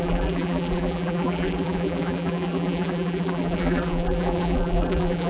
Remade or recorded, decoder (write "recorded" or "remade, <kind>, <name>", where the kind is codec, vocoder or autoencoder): remade, vocoder, BigVGAN v2